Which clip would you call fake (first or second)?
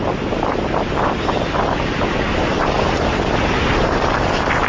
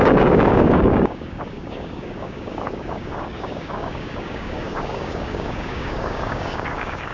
second